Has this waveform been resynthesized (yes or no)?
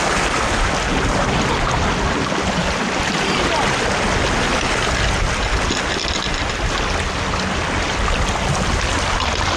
no